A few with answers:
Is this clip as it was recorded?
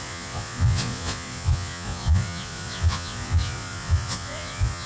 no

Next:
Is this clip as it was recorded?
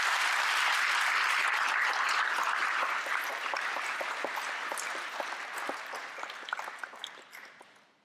yes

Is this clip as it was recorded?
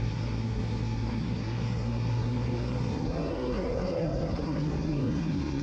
no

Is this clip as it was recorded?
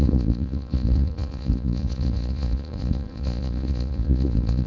no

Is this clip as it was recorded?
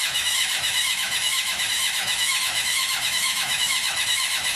no